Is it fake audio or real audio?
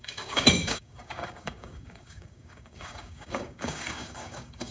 fake